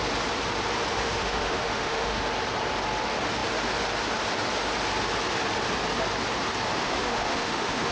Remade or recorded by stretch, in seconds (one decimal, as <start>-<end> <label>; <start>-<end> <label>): 0.0-1.0 recorded; 1.0-2.2 remade; 2.2-6.8 recorded; 6.8-7.9 remade